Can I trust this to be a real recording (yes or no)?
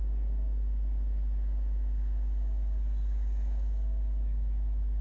yes